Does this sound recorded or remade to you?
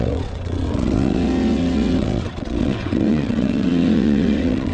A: remade